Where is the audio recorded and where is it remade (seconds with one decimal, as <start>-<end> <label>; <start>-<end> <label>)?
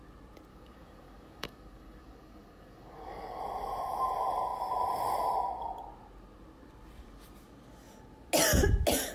0.0-0.5 recorded; 0.5-3.4 remade; 3.4-9.1 recorded